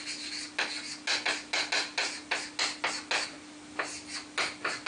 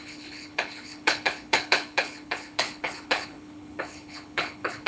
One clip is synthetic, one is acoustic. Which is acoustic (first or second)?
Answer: first